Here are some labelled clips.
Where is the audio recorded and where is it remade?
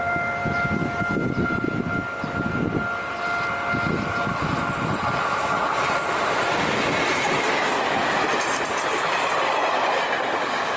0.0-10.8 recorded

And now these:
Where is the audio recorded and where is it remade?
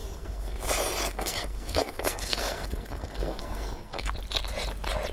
0.0-0.6 remade; 0.6-1.0 recorded; 1.0-4.1 remade; 4.1-5.1 recorded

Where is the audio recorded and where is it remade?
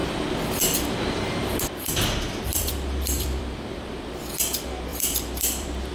0.0-0.6 remade; 0.6-2.5 recorded; 2.5-4.4 remade; 4.4-4.9 recorded; 4.9-5.9 remade